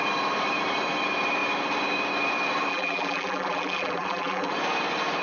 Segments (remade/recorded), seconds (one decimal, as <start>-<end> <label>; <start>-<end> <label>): 0.0-2.7 recorded; 2.7-4.5 remade; 4.5-5.2 recorded